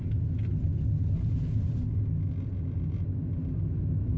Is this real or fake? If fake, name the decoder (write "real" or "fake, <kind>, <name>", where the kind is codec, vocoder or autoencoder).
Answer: real